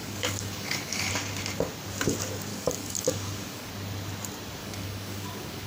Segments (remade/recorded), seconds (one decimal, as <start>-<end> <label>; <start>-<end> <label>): 0.0-1.1 remade; 1.1-2.5 recorded; 2.5-3.7 remade; 3.7-4.6 recorded; 4.6-5.7 remade

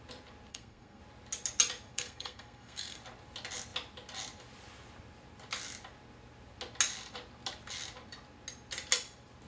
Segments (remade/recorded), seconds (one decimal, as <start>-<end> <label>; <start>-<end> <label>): 0.0-0.5 recorded; 0.5-1.0 remade; 1.0-1.9 recorded; 1.9-3.0 remade; 3.0-9.5 recorded

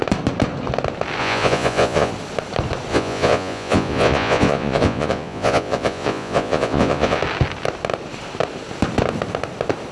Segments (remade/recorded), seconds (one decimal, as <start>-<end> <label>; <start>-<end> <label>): 0.0-1.2 recorded; 1.2-2.1 remade; 2.1-2.9 recorded; 2.9-7.2 remade; 7.2-9.9 recorded

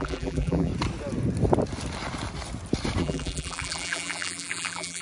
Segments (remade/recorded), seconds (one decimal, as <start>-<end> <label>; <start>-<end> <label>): 0.0-0.7 remade; 0.7-3.0 recorded; 3.0-5.0 remade

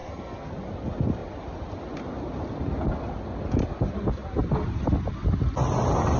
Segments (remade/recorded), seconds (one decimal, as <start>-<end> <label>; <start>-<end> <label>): 0.0-0.5 remade; 0.5-6.2 recorded

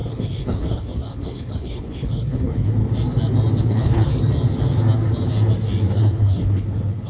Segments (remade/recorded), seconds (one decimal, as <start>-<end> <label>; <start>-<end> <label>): 0.0-2.8 remade; 2.8-3.6 recorded; 3.6-4.1 remade; 4.1-5.8 recorded; 5.8-7.1 remade